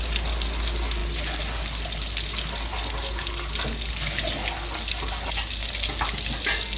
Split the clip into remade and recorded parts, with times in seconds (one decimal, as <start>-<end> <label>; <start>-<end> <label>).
0.0-6.8 recorded